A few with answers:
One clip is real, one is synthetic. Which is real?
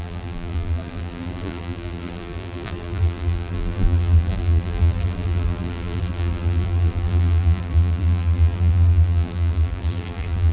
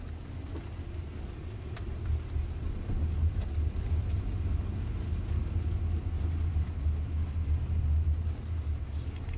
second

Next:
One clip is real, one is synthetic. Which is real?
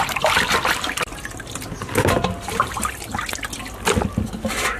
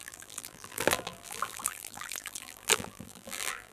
first